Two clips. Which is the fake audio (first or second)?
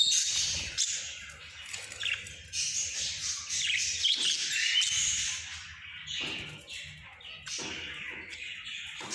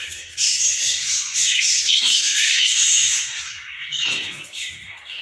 second